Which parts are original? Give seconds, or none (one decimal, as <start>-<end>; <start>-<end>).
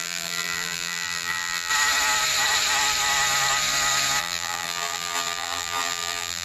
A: 1.7-4.2